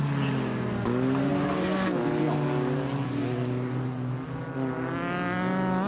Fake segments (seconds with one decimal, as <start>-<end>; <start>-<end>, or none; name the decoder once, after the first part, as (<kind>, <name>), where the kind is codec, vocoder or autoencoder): none